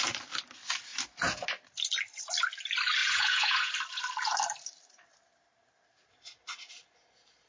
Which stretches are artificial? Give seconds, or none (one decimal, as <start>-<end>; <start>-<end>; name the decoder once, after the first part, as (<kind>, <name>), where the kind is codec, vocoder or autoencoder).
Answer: 3.0-3.7 (vocoder, Vocos)